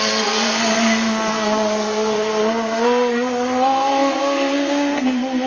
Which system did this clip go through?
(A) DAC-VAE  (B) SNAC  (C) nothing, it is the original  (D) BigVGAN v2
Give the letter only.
B